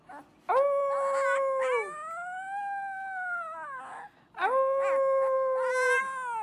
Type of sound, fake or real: real